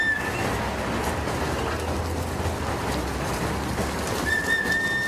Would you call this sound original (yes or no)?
yes